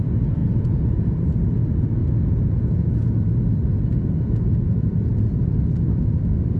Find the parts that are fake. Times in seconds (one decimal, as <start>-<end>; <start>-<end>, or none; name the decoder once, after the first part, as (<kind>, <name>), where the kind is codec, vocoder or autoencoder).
0.4-1.2 (vocoder, Vocos); 2.0-3.2; 3.9-5.1